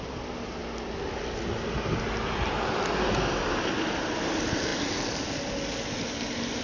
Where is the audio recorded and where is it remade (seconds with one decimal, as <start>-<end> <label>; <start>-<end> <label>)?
0.0-6.6 recorded